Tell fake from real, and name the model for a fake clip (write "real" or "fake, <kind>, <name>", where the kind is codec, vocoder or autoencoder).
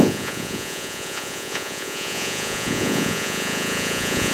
fake, vocoder, Vocos